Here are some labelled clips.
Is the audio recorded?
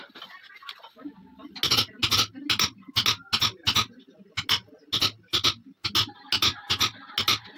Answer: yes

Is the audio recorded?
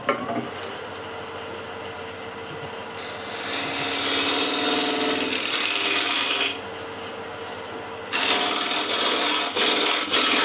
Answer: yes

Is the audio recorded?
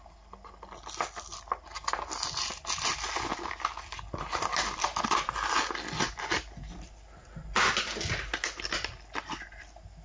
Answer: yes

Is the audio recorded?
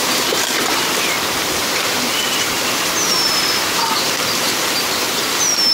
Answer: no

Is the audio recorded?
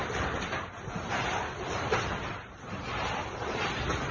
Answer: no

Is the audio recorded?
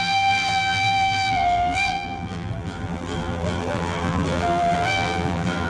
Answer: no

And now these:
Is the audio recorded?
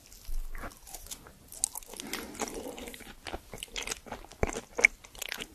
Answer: yes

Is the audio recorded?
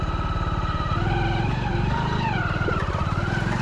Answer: no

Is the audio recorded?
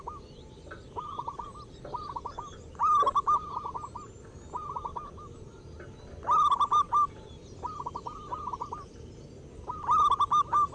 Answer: yes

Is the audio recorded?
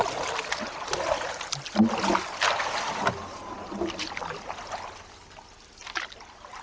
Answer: yes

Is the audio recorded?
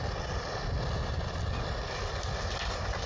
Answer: no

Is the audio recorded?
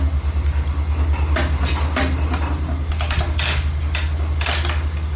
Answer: yes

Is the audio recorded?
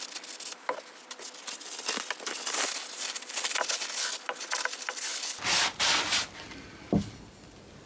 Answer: yes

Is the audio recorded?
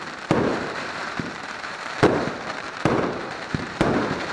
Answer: no